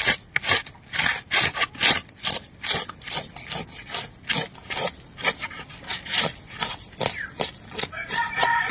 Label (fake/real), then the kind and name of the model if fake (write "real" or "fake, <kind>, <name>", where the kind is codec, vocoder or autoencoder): real